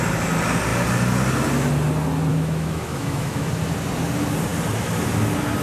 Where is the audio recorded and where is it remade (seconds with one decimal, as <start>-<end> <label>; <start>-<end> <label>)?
0.0-2.3 recorded; 2.3-3.5 remade; 3.5-5.6 recorded